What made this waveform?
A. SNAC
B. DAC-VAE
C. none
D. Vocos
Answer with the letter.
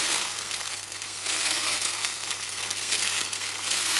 A